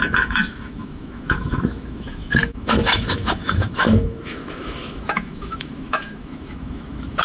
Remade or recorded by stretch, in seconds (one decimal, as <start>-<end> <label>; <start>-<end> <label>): 0.0-7.2 remade